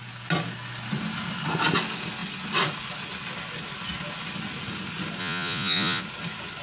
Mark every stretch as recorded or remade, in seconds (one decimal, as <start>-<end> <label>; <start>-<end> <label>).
0.0-5.2 recorded; 5.2-6.0 remade; 6.0-6.6 recorded